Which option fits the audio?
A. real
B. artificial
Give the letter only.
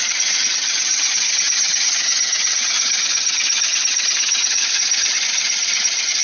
B